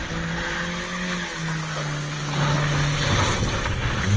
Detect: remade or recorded recorded